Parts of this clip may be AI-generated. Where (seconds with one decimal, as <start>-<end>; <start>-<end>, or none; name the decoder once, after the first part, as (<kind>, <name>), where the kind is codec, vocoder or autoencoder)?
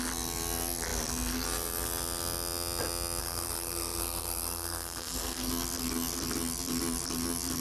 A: 3.2-5.5 (codec, SNAC)